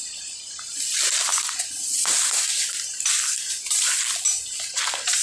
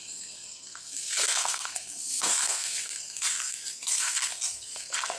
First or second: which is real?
first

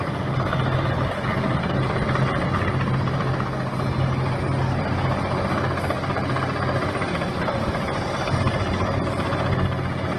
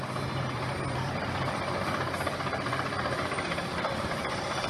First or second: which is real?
first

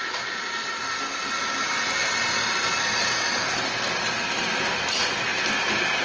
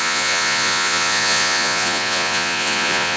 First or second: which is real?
first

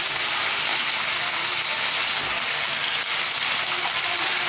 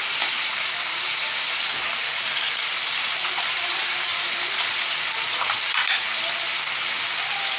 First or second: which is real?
first